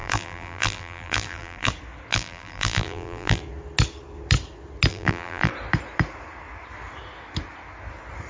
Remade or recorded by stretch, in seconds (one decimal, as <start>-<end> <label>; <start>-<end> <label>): 0.0-1.7 remade; 1.7-2.1 recorded; 2.1-3.4 remade; 3.4-4.9 recorded; 4.9-5.5 remade; 5.5-8.3 recorded